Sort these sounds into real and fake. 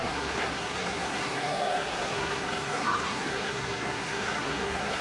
fake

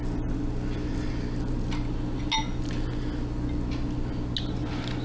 real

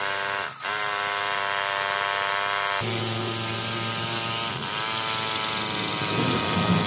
real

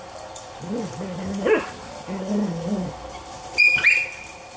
real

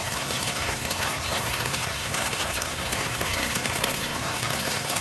fake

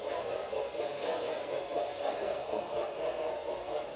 fake